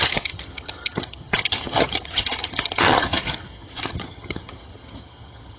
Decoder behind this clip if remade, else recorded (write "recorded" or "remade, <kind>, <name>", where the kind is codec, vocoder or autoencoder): remade, vocoder, HiFi-GAN